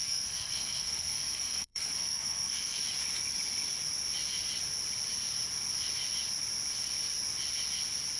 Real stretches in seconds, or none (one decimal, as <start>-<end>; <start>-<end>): 2.8-8.2